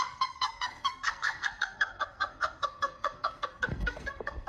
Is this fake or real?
fake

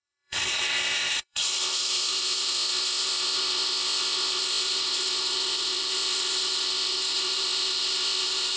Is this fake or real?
fake